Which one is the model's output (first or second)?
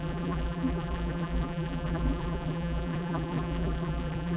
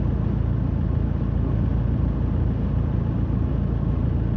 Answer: first